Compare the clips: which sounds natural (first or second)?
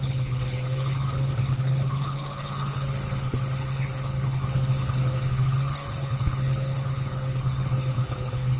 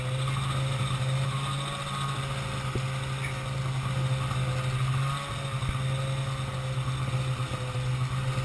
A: second